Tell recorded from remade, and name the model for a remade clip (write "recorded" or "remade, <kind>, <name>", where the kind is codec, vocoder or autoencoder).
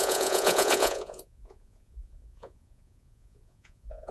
remade, vocoder, Vocos